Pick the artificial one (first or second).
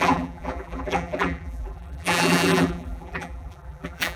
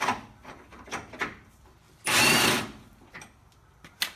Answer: first